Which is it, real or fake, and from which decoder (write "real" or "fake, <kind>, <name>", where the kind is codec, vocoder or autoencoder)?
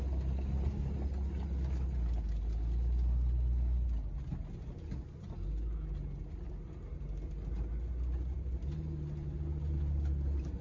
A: real